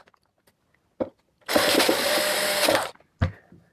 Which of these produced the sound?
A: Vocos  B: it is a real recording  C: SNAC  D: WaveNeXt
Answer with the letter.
B